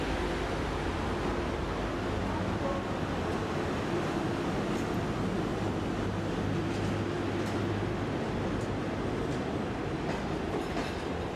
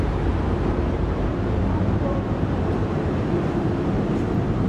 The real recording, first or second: first